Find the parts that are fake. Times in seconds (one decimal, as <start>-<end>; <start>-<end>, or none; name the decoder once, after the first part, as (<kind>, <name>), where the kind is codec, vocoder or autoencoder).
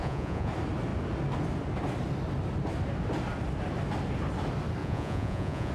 0.0-0.5 (vocoder, Vocos); 4.8-5.7